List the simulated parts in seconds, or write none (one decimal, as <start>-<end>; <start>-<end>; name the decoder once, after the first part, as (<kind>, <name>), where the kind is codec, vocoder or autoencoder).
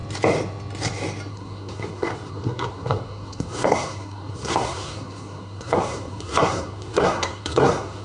1.3-8.0 (codec, SNAC)